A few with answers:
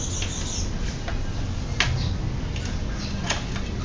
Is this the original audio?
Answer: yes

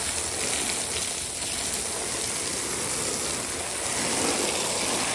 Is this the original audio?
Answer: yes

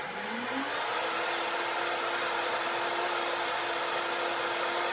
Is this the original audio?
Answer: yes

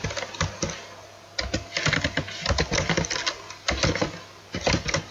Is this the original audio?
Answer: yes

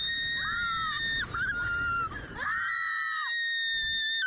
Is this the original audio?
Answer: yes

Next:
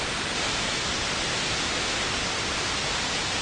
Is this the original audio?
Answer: yes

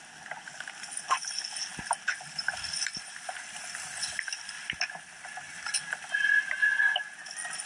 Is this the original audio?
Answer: yes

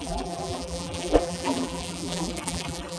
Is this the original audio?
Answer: no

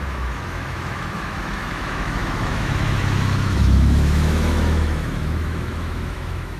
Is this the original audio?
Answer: no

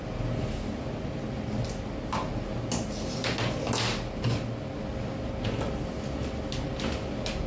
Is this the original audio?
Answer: yes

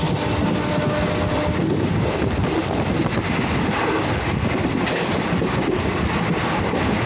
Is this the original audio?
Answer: yes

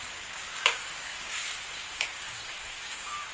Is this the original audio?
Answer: no